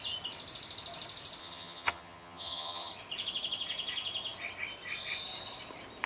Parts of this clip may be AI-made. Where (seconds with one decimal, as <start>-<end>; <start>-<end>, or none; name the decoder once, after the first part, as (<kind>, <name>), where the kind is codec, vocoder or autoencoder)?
1.4-2.9 (vocoder, HiFi-GAN)